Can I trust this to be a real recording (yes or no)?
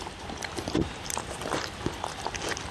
yes